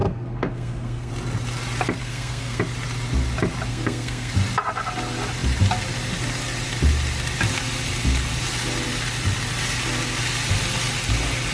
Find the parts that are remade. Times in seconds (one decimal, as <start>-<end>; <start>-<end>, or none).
0.0-1.1; 2.0-2.6; 3.7-4.3